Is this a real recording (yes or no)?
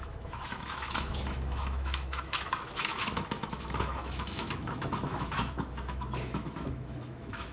no